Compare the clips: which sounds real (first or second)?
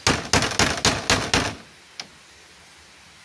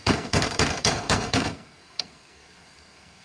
first